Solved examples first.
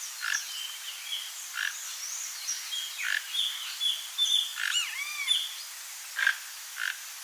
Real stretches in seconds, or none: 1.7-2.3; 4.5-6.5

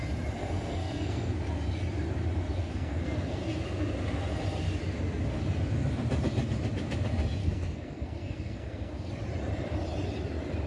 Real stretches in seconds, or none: 0.0-0.4; 1.4-2.6; 3.4-7.4; 9.1-10.7

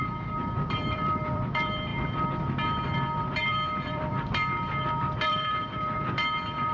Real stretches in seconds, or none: 1.9-3.2